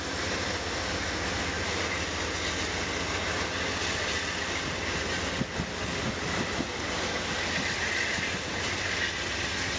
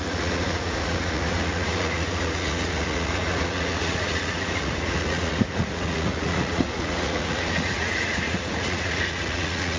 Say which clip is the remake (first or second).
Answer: second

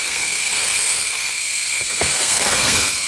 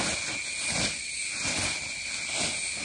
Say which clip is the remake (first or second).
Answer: first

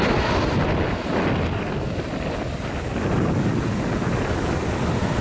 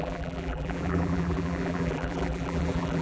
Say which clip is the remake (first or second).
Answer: second